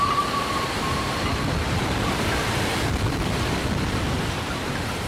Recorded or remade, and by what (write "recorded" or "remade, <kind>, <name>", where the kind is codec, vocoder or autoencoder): recorded